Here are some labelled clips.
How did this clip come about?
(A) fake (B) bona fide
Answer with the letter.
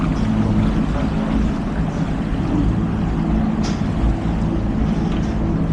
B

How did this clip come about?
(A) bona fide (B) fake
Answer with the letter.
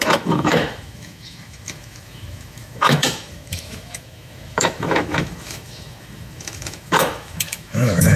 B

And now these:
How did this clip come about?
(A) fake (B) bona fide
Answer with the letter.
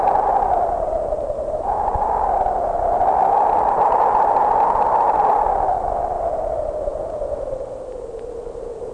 B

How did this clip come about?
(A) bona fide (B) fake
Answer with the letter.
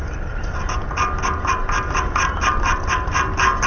A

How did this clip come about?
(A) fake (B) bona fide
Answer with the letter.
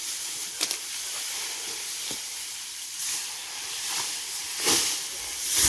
B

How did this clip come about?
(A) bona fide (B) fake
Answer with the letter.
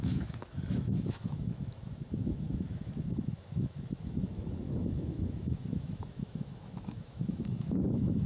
B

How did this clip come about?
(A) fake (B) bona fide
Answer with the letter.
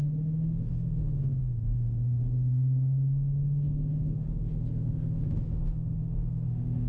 A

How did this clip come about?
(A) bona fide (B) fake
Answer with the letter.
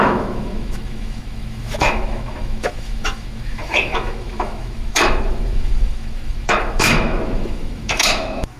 B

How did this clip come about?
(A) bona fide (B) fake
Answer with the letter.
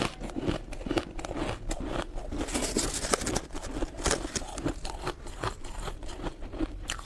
A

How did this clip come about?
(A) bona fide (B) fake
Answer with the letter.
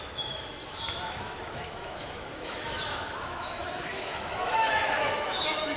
B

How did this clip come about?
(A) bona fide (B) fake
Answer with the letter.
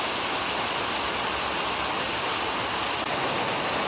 A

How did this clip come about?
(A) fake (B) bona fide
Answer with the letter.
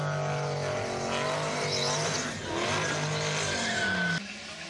B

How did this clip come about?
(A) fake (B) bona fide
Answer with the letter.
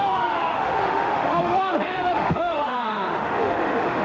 A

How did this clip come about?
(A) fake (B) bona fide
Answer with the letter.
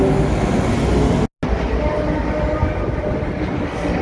B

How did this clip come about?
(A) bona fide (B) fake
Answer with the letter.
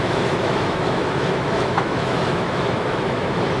B